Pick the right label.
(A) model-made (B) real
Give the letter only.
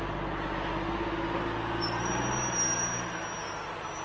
B